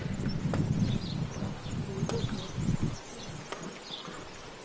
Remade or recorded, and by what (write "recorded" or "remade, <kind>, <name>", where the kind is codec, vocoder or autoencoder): recorded